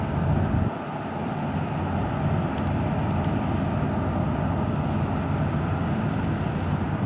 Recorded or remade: recorded